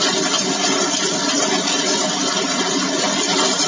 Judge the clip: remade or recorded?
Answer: recorded